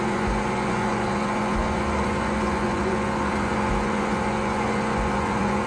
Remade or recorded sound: remade